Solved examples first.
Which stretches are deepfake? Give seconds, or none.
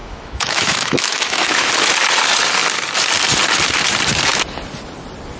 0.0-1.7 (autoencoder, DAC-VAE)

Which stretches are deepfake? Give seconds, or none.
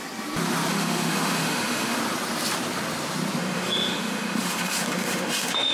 0.7-2.0 (autoencoder, DAC-VAE); 3.4-5.7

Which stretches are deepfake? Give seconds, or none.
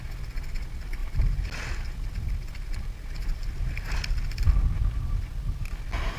none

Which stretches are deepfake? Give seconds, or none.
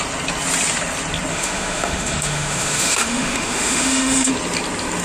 1.3-4.3 (autoencoder, DAC-VAE)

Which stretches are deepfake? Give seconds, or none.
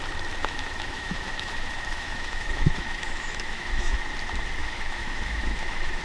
0.4-4.0 (autoencoder, DAC-VAE); 4.6-6.0